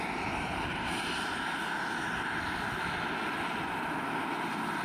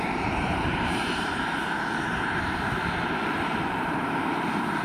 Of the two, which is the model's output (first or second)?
second